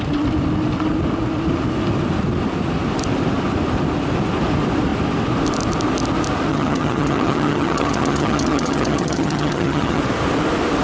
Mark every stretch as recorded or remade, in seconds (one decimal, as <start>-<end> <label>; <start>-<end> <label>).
0.0-6.5 recorded; 6.5-10.0 remade; 10.0-10.8 recorded